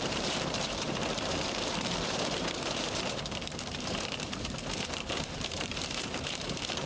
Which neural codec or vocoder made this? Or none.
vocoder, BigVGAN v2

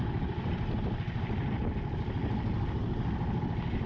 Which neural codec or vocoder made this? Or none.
none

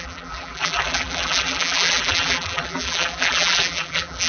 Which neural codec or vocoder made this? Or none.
vocoder, BigVGAN v2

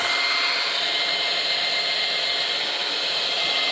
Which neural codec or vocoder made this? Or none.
none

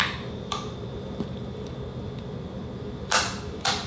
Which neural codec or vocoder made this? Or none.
vocoder, BigVGAN v2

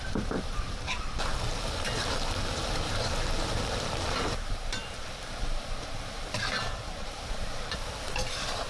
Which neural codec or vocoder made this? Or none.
vocoder, BigVGAN v2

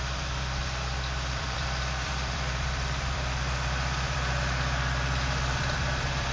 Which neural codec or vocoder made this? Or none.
vocoder, BigVGAN v2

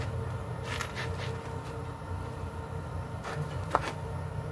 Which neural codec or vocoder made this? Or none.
none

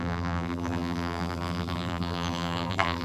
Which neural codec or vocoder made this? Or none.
vocoder, BigVGAN v2